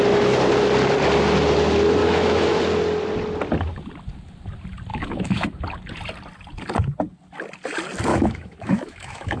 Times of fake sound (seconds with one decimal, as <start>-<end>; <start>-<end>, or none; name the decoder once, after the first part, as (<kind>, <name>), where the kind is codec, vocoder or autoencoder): 2.0-2.6 (autoencoder, DAC-VAE); 4.9-5.6; 8.1-9.4

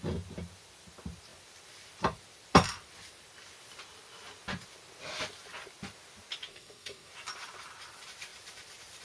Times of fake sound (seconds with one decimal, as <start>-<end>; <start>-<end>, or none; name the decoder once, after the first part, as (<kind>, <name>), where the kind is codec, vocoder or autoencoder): 6.5-7.1 (codec, DAC)

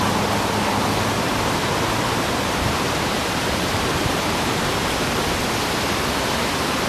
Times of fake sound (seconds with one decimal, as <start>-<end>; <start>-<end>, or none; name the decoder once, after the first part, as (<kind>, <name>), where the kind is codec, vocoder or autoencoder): 1.6-5.0 (vocoder, BigVGAN v2)